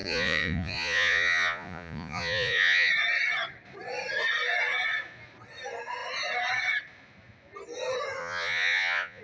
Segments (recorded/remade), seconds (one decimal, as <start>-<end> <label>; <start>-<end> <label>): 0.0-2.9 remade; 2.9-8.2 recorded; 8.2-9.2 remade